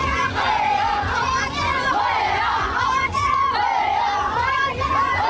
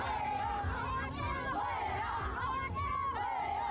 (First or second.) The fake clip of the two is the first